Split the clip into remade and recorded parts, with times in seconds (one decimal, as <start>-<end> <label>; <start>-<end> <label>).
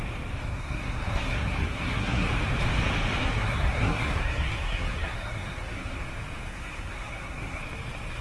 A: 0.0-0.6 recorded; 0.6-2.3 remade; 2.3-3.2 recorded; 3.2-6.0 remade; 6.0-6.5 recorded; 6.5-7.6 remade; 7.6-8.2 recorded